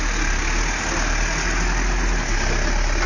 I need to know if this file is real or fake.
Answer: real